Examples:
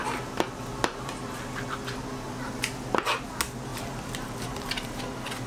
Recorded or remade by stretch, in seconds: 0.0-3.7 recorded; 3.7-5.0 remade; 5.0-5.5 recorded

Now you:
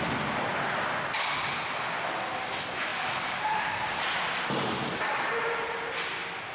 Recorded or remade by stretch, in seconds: 0.0-2.9 recorded; 2.9-5.2 remade; 5.2-6.5 recorded

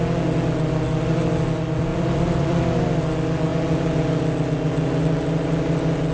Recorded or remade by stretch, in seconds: 0.0-1.9 recorded; 1.9-2.6 remade; 2.6-3.5 recorded; 3.5-4.0 remade; 4.0-6.1 recorded